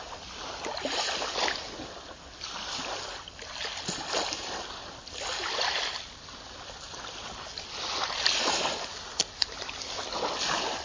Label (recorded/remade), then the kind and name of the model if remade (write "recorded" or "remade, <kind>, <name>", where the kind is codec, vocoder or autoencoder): recorded